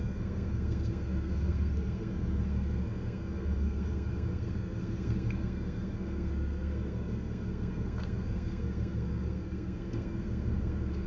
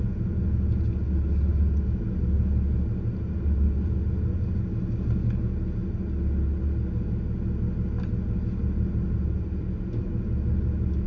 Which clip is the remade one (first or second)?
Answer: first